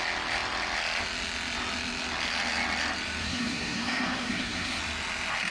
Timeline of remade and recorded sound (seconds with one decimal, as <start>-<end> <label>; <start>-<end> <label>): 0.0-3.2 recorded; 3.2-4.8 remade; 4.8-5.5 recorded